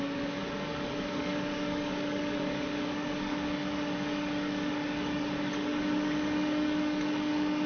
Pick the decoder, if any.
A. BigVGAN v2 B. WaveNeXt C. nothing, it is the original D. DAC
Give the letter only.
D